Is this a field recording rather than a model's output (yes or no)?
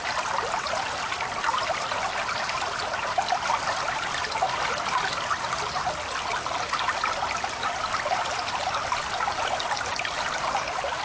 yes